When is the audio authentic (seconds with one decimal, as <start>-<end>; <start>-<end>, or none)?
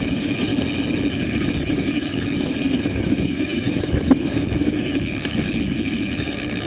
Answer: 0.5-1.1